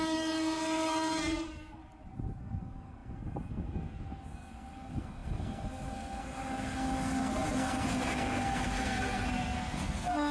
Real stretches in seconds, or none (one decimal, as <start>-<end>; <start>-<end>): 1.8-2.4